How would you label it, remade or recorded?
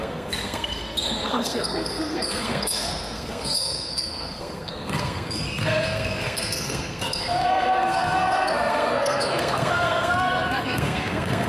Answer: remade